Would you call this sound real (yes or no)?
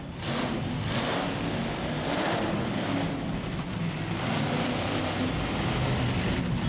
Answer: yes